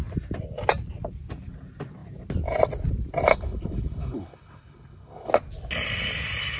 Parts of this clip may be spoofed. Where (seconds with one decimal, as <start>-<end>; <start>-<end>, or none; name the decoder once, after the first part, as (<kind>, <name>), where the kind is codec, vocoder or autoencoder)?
3.3-5.3 (codec, HILCodec)